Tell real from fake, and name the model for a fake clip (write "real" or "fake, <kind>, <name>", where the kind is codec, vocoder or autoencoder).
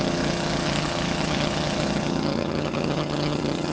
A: fake, vocoder, HiFi-GAN